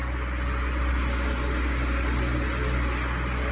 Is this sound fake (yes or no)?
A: no